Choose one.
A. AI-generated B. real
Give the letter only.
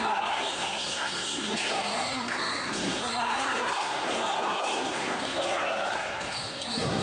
A